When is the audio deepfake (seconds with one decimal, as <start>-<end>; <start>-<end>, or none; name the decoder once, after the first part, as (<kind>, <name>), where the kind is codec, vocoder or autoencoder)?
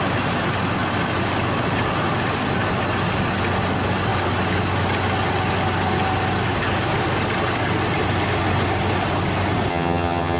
9.7-10.4 (vocoder, HiFi-GAN)